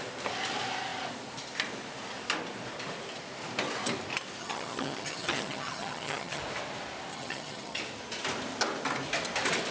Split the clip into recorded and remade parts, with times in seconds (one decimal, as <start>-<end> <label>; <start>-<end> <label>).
0.0-4.4 recorded; 4.4-6.4 remade; 6.4-7.1 recorded; 7.1-7.8 remade; 7.8-9.7 recorded